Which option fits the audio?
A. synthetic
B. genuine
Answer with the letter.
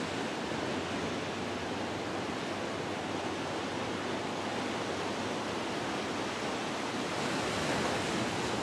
B